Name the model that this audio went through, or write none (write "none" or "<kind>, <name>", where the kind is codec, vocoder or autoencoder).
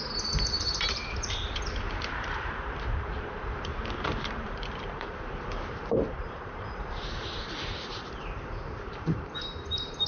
vocoder, BigVGAN v2